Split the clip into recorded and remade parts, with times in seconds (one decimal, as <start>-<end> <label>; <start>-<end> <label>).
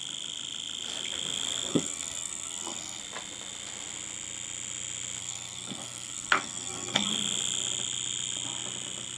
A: 0.0-1.7 recorded; 1.7-3.0 remade; 3.0-5.2 recorded; 5.2-7.1 remade; 7.1-9.2 recorded